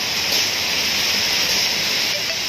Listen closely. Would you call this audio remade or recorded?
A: recorded